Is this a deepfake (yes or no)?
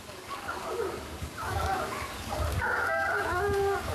yes